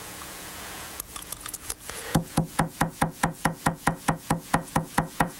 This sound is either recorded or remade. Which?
remade